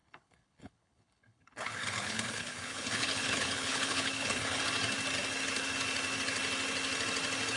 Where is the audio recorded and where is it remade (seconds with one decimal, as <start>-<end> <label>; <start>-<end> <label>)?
0.0-4.6 remade; 4.6-7.6 recorded